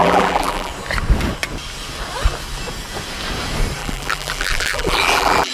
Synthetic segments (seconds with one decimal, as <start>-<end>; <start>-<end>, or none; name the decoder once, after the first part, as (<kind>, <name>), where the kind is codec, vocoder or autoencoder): 0.0-0.7 (vocoder, BigVGAN v2); 3.8-5.5